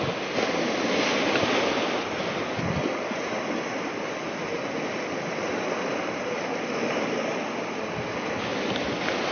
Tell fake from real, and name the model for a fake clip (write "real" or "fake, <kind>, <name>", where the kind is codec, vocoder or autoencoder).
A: real